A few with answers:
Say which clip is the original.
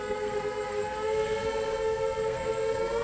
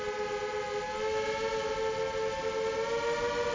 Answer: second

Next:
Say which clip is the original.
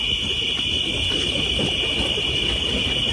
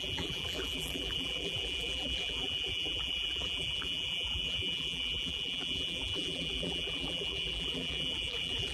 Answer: first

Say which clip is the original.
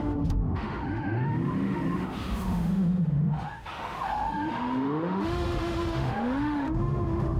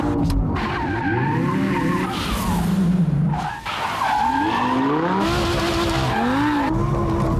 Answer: second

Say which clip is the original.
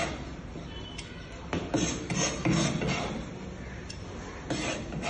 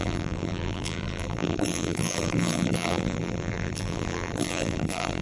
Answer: first